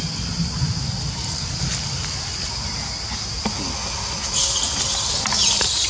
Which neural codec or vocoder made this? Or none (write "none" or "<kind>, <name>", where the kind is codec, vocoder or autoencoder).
none